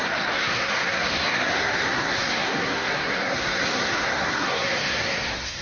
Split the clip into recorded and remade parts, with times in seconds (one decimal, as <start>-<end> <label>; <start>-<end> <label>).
0.0-5.6 remade

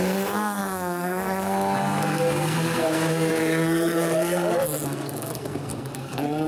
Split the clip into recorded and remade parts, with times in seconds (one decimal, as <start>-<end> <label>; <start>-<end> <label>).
0.0-6.5 remade

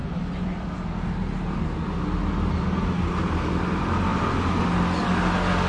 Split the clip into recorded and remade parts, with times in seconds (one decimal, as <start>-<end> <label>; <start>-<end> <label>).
0.0-5.7 recorded

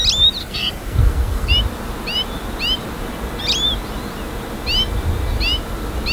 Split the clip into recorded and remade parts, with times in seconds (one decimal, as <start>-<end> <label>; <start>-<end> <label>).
0.0-0.4 recorded; 0.4-1.5 remade; 1.5-6.1 recorded

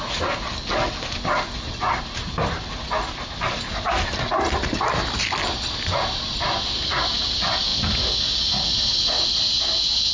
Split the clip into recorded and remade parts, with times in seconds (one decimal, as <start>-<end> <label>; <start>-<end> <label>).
0.0-10.1 recorded

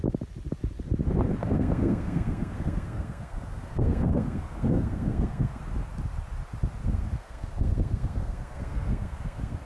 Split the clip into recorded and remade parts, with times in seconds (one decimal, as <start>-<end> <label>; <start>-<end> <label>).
0.0-1.4 recorded; 1.4-5.6 remade; 5.6-6.8 recorded; 6.8-9.7 remade

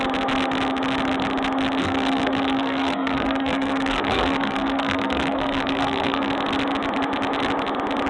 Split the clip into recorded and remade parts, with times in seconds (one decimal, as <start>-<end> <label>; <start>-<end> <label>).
0.0-1.8 recorded; 1.8-6.3 remade; 6.3-8.1 recorded